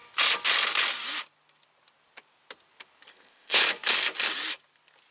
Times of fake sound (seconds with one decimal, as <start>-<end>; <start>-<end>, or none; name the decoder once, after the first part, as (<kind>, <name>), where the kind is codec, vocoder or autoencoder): 3.1-3.6 (codec, ZipCodec)